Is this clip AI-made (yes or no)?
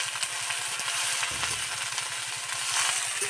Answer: no